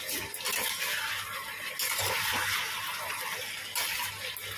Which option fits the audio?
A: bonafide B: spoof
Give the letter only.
A